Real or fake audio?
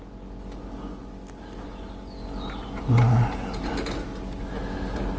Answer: real